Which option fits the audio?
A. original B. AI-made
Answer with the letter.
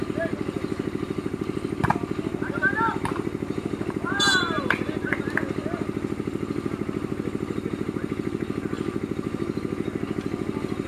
A